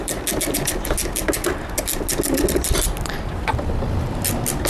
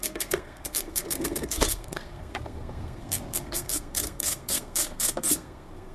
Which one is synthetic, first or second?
second